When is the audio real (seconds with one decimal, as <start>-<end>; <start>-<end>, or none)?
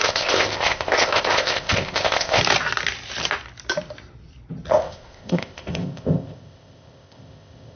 2.4-4.7